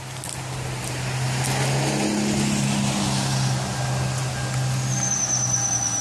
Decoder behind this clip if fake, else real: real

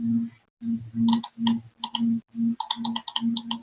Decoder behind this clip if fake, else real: real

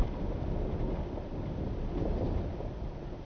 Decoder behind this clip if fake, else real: real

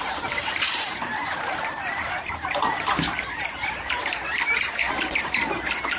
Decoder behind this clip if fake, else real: fake, vocoder, BigVGAN v2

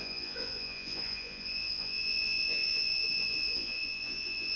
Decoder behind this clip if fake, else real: fake, vocoder, Vocos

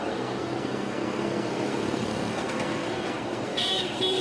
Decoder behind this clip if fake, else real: fake, codec, SNAC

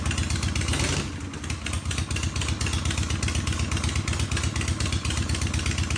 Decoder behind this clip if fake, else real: real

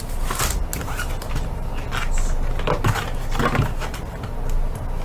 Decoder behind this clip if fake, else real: real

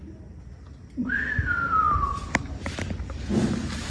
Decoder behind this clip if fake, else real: real